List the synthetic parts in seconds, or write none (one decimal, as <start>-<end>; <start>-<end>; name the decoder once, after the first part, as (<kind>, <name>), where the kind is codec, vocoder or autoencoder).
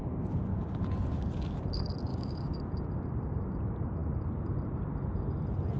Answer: 2.1-2.6 (codec, DAC)